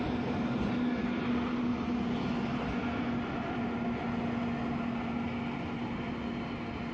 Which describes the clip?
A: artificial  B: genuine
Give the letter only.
B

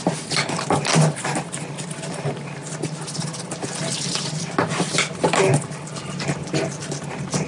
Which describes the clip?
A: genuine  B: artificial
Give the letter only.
A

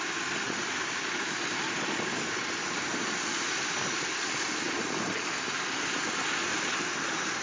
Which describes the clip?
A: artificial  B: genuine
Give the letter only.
B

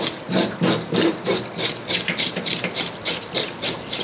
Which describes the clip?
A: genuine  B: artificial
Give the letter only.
B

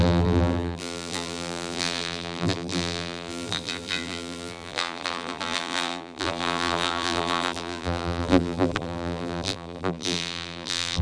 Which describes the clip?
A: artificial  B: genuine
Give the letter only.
A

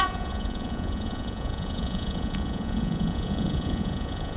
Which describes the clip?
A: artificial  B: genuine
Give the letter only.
A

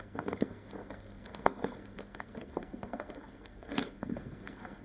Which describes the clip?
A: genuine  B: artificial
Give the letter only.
B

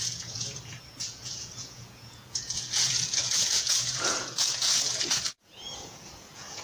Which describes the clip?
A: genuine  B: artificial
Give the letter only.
B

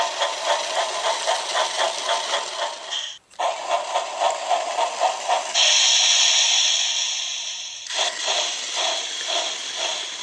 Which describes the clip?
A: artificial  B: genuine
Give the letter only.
B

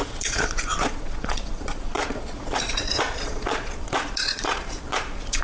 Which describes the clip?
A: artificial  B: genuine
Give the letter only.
A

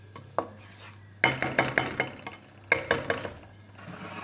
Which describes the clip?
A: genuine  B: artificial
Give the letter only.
A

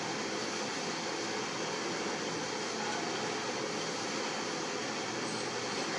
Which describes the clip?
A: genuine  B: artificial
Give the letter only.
A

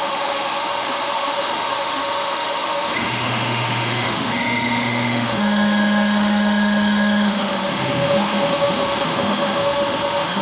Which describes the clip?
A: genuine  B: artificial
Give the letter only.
B